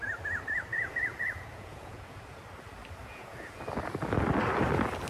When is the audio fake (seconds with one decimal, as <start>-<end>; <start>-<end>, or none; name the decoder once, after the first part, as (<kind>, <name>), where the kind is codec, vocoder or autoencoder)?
0.7-2.2 (vocoder, Vocos); 3.0-3.6